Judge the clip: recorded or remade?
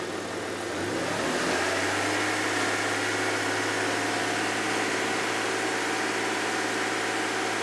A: recorded